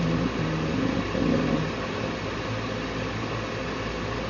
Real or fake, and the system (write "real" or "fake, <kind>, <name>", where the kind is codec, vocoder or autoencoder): real